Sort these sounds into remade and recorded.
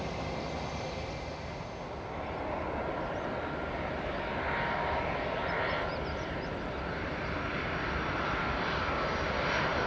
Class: recorded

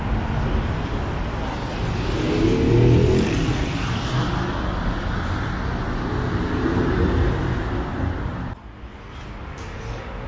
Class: recorded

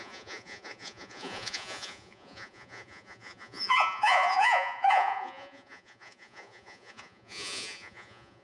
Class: remade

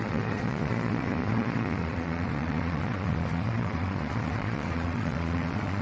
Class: remade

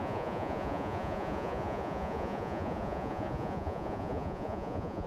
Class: remade